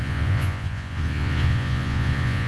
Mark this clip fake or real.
fake